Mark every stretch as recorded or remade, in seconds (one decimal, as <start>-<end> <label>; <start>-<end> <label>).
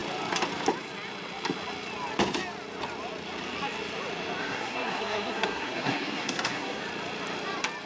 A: 0.0-4.4 recorded; 4.4-6.8 remade; 6.8-7.9 recorded